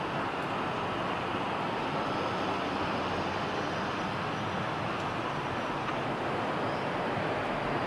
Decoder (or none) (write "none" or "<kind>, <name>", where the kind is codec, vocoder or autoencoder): none